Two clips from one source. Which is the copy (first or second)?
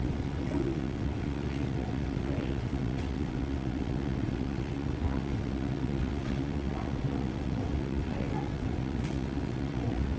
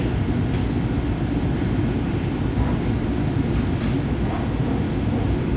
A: first